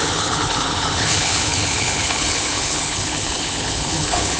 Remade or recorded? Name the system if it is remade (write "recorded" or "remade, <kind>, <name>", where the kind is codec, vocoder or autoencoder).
remade, codec, HILCodec